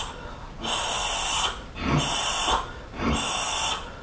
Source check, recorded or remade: recorded